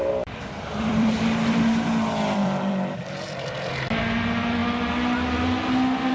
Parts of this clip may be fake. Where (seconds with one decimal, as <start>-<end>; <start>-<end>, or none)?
0.0-3.7